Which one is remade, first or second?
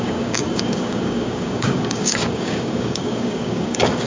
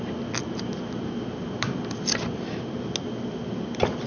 first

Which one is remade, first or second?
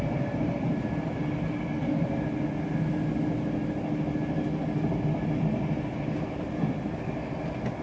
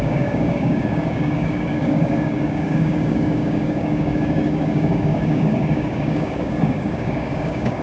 second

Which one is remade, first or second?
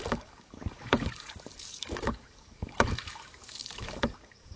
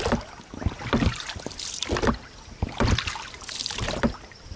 first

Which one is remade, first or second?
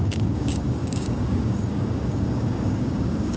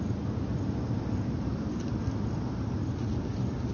first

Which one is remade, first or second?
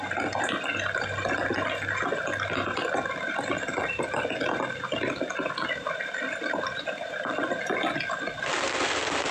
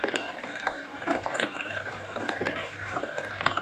second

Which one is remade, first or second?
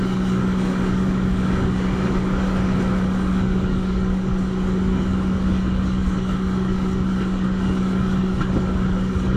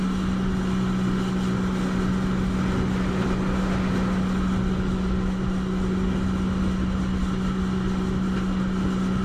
first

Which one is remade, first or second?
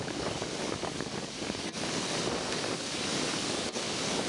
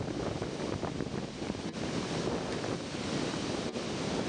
first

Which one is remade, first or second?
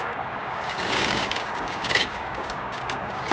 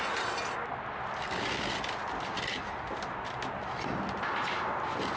first